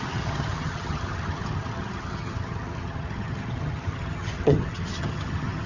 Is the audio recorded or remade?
remade